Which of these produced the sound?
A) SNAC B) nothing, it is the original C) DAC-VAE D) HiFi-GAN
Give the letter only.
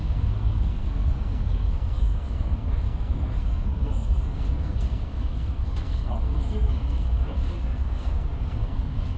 A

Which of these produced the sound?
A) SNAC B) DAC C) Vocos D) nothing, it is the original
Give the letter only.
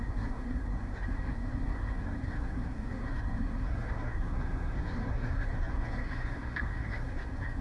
A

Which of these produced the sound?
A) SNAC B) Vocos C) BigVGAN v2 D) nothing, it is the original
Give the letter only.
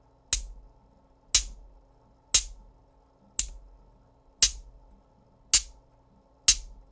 D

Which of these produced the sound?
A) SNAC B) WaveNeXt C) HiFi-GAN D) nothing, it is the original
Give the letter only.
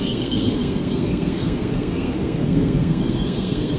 A